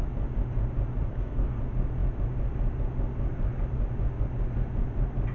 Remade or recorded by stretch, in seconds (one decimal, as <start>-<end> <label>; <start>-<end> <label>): 0.0-1.1 recorded; 1.1-1.6 remade; 1.6-5.3 recorded